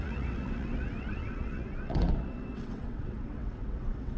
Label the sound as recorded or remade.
remade